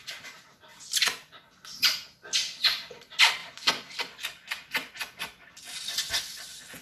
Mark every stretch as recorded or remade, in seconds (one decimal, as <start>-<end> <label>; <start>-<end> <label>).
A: 0.0-6.8 recorded